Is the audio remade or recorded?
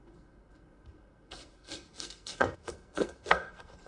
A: remade